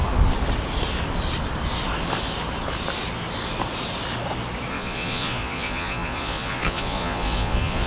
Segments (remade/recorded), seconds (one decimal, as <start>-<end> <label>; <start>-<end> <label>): 0.0-4.7 recorded; 4.7-7.9 remade